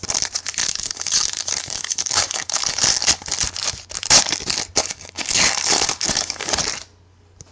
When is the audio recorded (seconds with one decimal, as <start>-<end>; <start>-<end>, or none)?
0.0-0.6; 2.8-4.8; 6.6-7.5